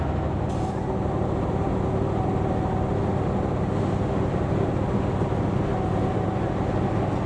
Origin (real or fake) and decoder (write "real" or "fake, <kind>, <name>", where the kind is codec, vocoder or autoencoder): real